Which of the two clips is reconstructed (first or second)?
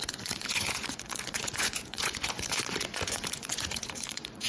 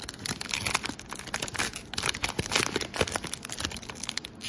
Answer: first